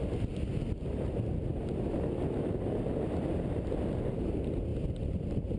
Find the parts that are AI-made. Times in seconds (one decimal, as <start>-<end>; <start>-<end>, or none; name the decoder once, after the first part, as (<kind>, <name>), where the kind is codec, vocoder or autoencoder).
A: 4.7-5.6 (vocoder, BigVGAN v2)